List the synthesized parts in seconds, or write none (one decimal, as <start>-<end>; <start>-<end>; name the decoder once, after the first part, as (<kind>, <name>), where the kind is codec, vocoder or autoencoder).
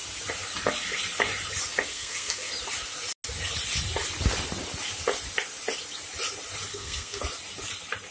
1.9-2.5 (codec, SNAC); 6.7-7.2